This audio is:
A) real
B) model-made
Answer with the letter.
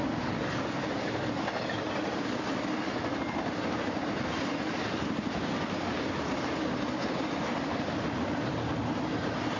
A